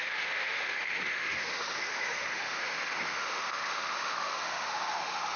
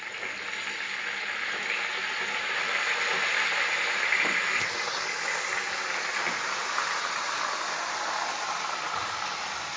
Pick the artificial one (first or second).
first